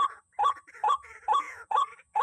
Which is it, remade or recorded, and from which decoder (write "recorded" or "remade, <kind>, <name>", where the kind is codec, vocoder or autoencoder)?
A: remade, vocoder, Vocos